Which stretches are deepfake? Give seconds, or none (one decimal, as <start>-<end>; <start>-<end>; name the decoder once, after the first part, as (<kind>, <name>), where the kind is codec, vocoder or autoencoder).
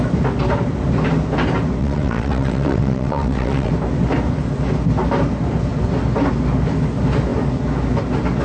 1.8-3.7 (vocoder, WaveNeXt)